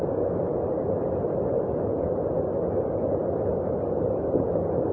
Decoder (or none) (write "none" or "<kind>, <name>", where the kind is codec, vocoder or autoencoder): none